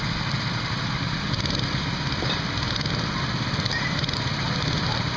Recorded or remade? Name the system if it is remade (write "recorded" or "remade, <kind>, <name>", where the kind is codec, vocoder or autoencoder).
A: recorded